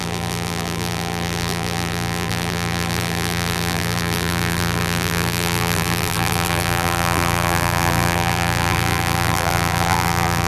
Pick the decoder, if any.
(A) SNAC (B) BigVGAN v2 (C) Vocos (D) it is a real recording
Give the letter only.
B